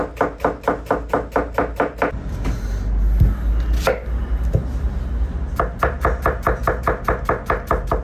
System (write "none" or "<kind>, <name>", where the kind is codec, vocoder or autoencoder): none